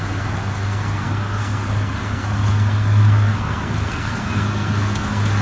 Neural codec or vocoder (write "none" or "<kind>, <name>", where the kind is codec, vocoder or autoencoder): codec, SNAC